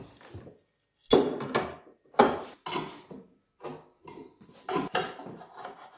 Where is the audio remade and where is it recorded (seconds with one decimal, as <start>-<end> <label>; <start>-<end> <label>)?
0.0-6.0 recorded